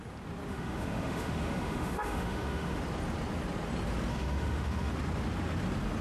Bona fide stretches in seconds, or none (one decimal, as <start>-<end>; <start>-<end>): 0.0-0.5; 2.8-4.1; 4.9-6.0